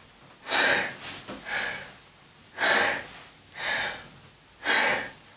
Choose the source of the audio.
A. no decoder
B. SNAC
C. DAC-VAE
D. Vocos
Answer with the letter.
A